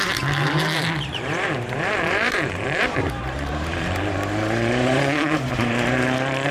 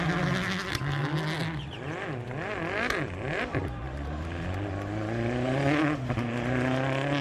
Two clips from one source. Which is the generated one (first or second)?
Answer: first